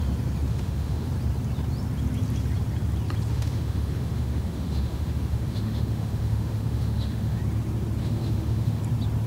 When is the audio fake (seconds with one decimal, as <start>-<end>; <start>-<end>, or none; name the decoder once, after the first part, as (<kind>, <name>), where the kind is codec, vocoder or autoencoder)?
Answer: 0.5-1.1 (autoencoder, DAC-VAE); 3.3-7.4; 8.0-8.8

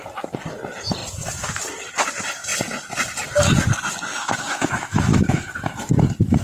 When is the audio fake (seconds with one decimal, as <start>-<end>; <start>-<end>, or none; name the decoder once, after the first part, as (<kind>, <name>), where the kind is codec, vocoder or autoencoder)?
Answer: 4.1-5.9 (autoencoder, DAC-VAE)

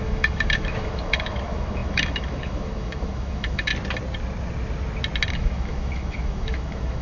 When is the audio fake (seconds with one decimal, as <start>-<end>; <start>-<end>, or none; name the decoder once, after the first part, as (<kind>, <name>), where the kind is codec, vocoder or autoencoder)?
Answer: 0.0-3.7 (autoencoder, DAC-VAE); 5.3-7.0

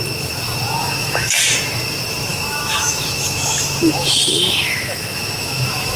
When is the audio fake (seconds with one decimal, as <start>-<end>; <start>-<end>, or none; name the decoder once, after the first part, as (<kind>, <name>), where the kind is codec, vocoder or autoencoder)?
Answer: 0.8-1.4 (autoencoder, DAC-VAE); 2.3-6.0

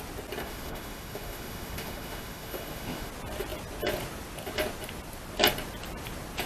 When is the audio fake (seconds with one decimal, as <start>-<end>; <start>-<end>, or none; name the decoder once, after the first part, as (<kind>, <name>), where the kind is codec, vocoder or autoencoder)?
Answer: 0.4-3.1 (autoencoder, DAC-VAE)

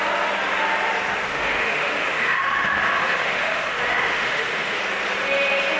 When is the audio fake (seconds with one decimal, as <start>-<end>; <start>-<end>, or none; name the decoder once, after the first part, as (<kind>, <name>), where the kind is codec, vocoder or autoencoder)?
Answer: 1.3-4.8 (autoencoder, DAC-VAE)

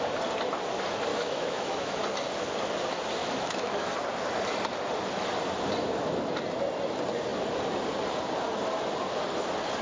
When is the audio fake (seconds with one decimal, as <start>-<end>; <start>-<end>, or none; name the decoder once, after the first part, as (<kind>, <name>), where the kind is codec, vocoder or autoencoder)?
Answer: 1.1-2.0 (autoencoder, DAC-VAE); 3.2-3.9